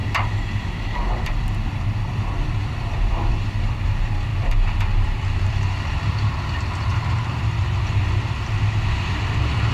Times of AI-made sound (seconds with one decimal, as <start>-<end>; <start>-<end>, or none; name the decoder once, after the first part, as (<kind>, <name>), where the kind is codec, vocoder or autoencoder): 0.0-3.7 (vocoder, BigVGAN v2); 4.3-6.5; 6.9-7.6